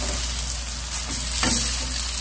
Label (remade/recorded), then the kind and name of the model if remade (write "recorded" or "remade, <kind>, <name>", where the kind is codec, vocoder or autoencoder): recorded